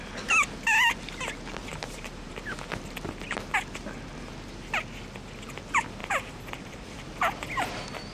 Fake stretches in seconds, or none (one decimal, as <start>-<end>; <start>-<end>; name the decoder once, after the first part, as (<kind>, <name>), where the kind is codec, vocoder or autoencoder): 1.7-2.3 (vocoder, BigVGAN v2); 6.0-7.0